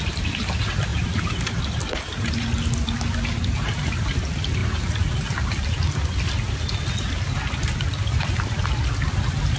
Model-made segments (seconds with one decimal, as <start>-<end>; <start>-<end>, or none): 0.9-2.3